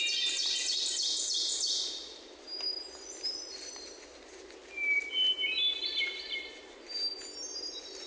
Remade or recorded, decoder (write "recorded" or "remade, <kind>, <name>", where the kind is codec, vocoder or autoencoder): recorded